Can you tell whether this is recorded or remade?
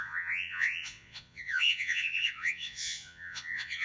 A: remade